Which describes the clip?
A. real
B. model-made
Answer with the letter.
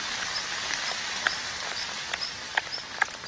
B